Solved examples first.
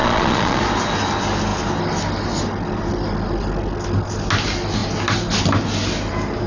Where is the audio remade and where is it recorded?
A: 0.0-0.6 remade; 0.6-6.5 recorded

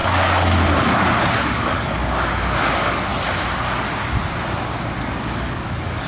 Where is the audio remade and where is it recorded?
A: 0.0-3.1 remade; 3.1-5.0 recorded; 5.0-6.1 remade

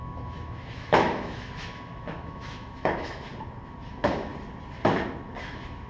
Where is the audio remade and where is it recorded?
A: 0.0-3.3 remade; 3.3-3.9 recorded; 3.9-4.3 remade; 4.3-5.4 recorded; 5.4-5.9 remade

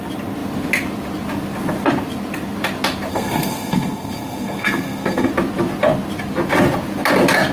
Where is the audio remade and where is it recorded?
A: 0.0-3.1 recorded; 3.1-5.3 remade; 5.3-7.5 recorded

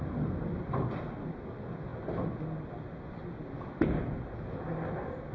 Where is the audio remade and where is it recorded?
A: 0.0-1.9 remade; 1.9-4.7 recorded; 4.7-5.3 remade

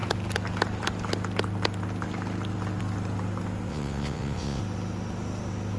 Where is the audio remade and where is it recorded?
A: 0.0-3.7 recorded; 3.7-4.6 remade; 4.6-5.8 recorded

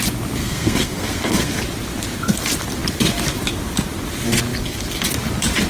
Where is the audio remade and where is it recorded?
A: 0.0-0.4 recorded; 0.4-1.6 remade; 1.6-5.7 recorded